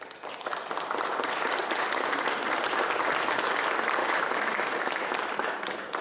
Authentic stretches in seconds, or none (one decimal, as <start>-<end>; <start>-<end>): 0.0-4.0; 5.1-6.0